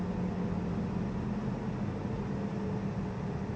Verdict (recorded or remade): recorded